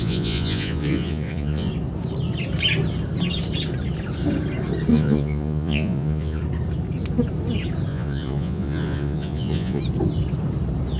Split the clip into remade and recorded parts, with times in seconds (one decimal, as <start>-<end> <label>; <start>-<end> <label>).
0.0-1.7 remade; 1.7-4.9 recorded; 4.9-6.4 remade; 6.4-7.9 recorded; 7.9-9.8 remade; 9.8-11.0 recorded